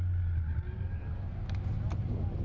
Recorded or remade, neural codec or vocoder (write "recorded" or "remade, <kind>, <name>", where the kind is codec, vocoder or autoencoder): recorded